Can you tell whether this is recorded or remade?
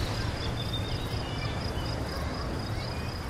recorded